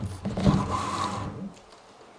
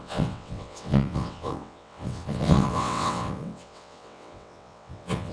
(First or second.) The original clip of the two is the first